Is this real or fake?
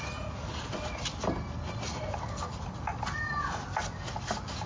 real